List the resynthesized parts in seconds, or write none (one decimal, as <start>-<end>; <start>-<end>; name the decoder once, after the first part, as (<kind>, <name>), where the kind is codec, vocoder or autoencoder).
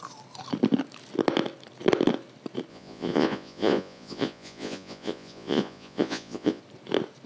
2.7-6.6 (vocoder, Vocos)